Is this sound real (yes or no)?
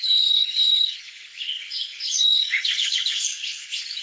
no